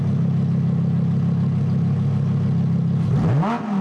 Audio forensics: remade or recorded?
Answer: recorded